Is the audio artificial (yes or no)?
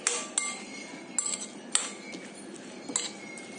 no